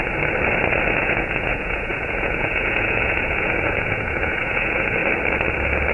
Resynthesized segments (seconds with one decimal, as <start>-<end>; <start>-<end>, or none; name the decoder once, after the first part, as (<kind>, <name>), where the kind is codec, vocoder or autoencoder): 1.0-5.0 (vocoder, Vocos)